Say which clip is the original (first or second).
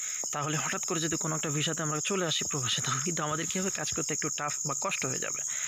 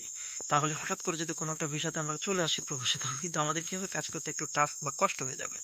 first